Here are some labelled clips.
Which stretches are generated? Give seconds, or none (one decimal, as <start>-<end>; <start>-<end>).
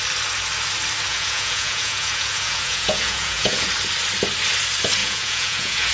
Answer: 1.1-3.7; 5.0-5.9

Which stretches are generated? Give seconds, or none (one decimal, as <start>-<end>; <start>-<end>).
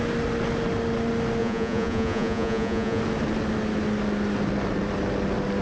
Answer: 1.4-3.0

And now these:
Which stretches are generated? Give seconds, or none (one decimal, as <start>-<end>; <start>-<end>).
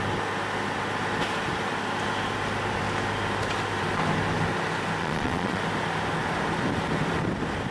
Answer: 5.0-5.6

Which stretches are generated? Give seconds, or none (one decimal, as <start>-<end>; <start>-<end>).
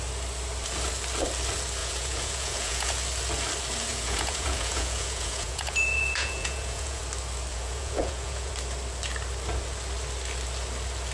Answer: 1.8-2.9; 3.9-7.0; 7.5-8.5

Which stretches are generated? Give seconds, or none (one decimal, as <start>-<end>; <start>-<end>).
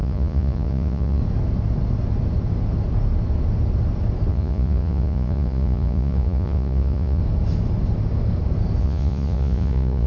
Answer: 0.0-1.2; 4.3-7.2; 8.8-10.1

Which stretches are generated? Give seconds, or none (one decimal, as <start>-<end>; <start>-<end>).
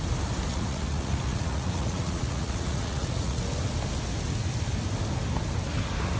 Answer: 0.5-3.4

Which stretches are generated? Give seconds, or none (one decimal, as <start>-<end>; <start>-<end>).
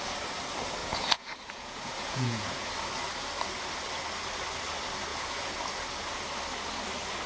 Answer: 0.8-2.7; 5.1-5.6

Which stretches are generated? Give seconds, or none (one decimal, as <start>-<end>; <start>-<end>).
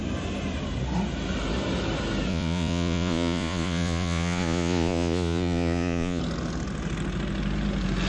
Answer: 2.3-6.2